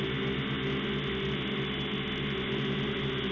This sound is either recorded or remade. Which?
recorded